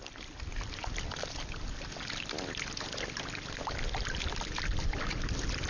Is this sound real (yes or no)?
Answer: yes